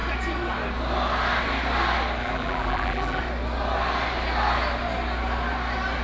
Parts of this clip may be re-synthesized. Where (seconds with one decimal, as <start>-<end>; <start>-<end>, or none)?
2.2-3.2